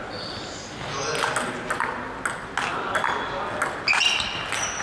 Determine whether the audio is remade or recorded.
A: recorded